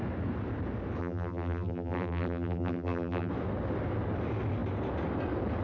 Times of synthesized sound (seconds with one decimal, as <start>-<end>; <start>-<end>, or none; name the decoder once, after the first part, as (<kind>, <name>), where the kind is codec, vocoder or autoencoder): 1.0-3.3 (vocoder, BigVGAN v2)